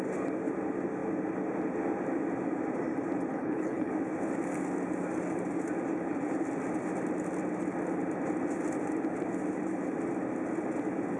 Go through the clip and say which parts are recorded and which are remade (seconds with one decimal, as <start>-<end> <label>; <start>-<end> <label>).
0.0-3.3 recorded; 3.3-3.9 remade; 3.9-11.2 recorded